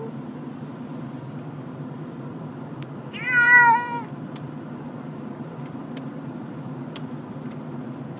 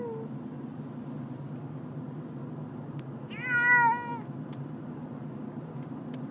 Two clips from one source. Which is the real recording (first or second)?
second